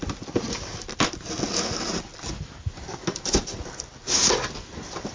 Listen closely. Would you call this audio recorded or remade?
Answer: recorded